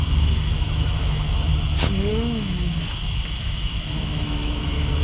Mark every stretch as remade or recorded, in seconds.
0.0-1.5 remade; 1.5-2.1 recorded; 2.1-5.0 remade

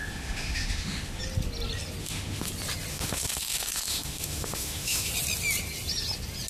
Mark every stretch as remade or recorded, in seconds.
0.0-1.2 remade; 1.2-2.0 recorded; 2.0-2.5 remade; 2.5-2.9 recorded; 2.9-5.1 remade; 5.1-6.5 recorded

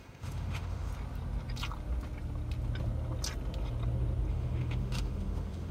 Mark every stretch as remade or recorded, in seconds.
0.0-0.9 remade; 0.9-4.3 recorded; 4.3-5.7 remade

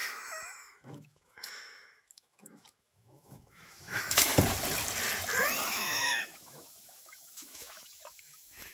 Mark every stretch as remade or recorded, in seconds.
0.0-4.3 remade; 4.3-5.7 recorded; 5.7-8.7 remade

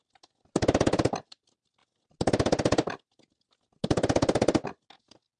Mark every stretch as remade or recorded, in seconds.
0.0-5.4 recorded

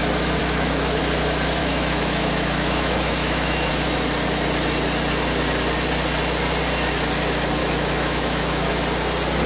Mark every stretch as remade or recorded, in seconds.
0.0-0.4 recorded; 0.4-1.0 remade; 1.0-1.6 recorded; 1.6-3.7 remade; 3.7-7.6 recorded; 7.6-8.7 remade; 8.7-9.5 recorded

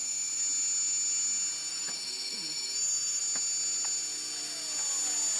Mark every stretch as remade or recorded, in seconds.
0.0-1.7 recorded; 1.7-3.2 remade; 3.2-5.4 recorded